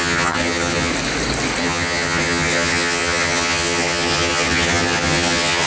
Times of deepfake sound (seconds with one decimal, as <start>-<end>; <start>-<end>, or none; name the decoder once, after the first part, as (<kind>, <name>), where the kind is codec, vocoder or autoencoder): 0.0-0.9 (vocoder, HiFi-GAN); 1.6-5.7